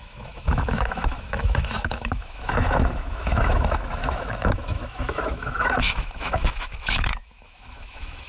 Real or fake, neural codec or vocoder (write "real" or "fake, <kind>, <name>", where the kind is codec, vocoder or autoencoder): fake, autoencoder, DAC-VAE